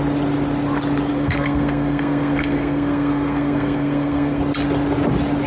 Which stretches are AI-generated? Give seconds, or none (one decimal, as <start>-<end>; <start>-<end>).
1.1-4.4